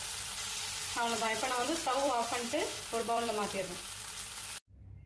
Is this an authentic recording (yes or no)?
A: no